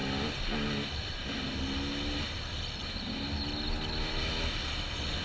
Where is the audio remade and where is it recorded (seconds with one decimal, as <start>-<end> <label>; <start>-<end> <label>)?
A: 0.0-5.2 recorded